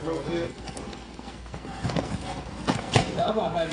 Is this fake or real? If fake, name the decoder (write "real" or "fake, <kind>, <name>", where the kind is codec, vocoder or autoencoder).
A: fake, codec, SNAC